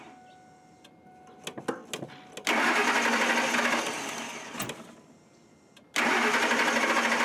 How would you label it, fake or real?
real